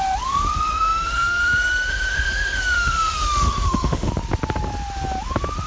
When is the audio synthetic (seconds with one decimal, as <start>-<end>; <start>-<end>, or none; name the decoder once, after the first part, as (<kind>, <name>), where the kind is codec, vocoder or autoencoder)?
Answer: 0.7-4.1 (autoencoder, DAC-VAE)